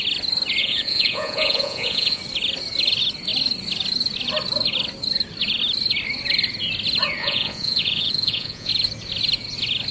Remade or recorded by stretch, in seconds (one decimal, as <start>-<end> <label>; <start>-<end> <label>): 0.0-0.6 recorded; 0.6-2.2 remade; 2.2-7.2 recorded; 7.2-8.7 remade; 8.7-9.9 recorded